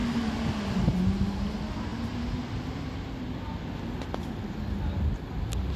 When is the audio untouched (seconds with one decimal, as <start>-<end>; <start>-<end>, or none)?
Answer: 0.0-5.8